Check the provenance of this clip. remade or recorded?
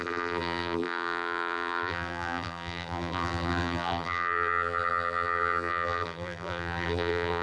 remade